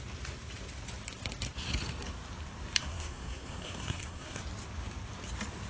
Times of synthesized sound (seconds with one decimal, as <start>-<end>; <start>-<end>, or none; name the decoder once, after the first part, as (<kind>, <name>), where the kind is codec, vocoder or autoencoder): 2.8-4.4 (codec, SNAC)